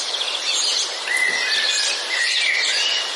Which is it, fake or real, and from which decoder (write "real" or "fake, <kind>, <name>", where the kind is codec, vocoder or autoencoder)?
real